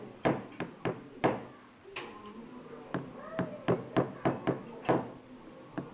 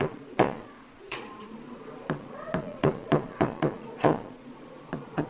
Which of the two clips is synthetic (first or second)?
second